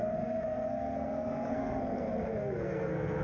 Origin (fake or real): fake